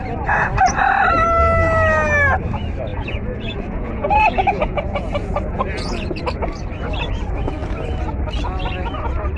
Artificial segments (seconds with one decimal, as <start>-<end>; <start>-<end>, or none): 2.9-6.2